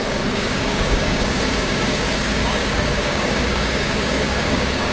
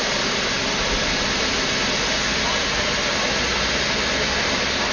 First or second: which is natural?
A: second